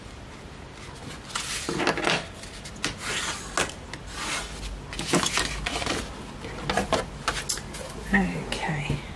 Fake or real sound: real